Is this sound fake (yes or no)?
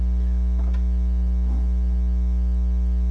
no